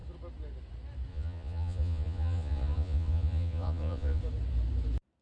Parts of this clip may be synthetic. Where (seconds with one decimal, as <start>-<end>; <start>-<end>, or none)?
1.1-4.2